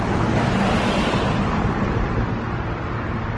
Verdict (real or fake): real